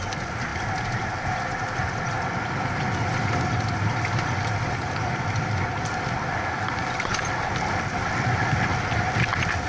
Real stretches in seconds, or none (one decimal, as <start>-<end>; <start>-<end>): 0.0-9.7